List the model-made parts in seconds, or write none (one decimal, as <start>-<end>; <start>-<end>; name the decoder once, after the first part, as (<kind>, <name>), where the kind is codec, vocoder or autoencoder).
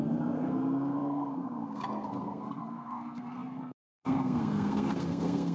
0.0-5.5 (codec, SNAC)